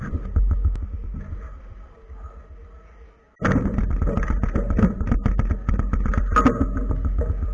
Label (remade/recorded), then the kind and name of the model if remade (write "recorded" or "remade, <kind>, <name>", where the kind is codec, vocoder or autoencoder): recorded